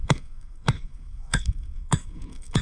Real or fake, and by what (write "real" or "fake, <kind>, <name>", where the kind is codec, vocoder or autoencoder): fake, codec, SNAC